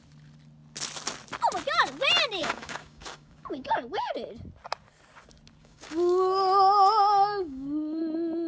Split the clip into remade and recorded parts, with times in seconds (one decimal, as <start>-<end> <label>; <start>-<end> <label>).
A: 0.0-2.4 recorded; 2.4-4.1 remade; 4.1-5.6 recorded; 5.6-8.0 remade; 8.0-8.5 recorded